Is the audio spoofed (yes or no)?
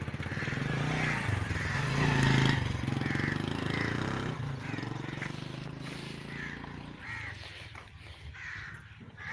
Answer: no